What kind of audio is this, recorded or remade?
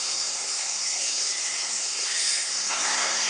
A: remade